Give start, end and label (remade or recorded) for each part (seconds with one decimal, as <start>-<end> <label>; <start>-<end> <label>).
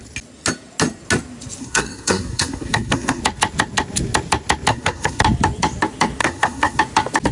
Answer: 0.0-1.6 recorded; 1.6-3.2 remade; 3.2-4.7 recorded; 4.7-5.2 remade; 5.2-6.2 recorded; 6.2-6.8 remade; 6.8-7.3 recorded